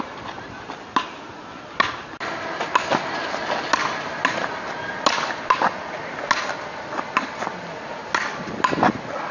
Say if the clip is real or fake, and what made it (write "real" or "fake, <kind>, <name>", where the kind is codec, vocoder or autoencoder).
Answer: real